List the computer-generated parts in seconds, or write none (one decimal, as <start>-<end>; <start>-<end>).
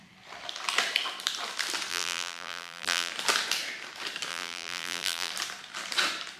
1.9-3.1; 4.3-5.3